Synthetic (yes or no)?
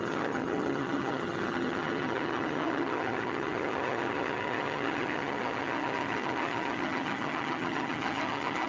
yes